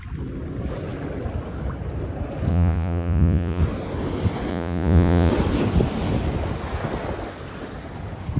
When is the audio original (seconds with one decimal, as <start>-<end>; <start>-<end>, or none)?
0.0-2.5; 3.6-4.5; 5.3-8.4